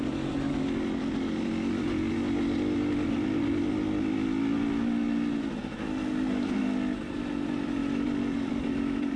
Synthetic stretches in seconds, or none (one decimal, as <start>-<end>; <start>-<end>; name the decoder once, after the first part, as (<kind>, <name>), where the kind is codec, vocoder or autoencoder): none